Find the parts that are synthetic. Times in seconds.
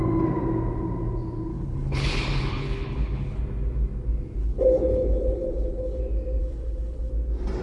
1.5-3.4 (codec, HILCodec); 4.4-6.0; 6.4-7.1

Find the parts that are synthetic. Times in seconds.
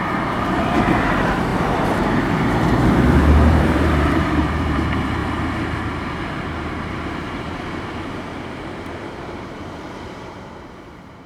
0.0-5.2 (vocoder, BigVGAN v2); 6.4-11.3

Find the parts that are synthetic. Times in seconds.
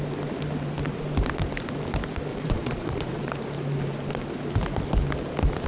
2.3-3.3 (vocoder, Vocos)